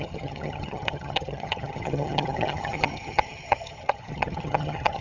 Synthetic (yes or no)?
yes